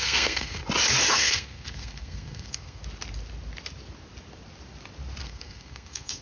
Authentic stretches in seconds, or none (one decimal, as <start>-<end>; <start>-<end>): 0.6-1.1; 2.8-5.2